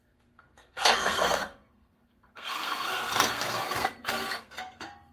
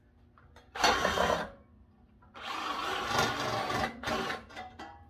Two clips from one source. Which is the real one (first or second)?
second